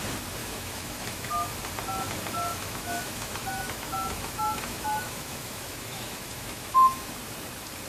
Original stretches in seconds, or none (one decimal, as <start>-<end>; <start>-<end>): 0.0-0.4; 1.3-2.5; 7.1-7.9